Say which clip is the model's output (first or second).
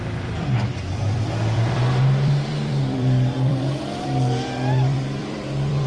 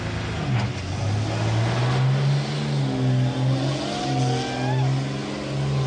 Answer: first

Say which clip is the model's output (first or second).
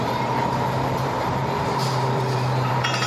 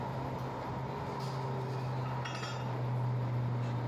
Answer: first